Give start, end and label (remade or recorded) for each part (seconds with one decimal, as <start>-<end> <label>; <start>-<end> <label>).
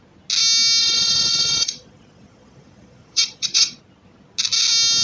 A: 0.0-0.8 recorded; 0.8-3.8 remade; 3.8-5.0 recorded